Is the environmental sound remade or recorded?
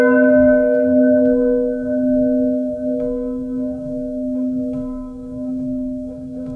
remade